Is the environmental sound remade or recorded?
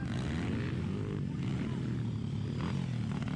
recorded